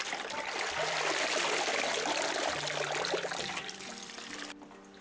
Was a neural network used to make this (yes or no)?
yes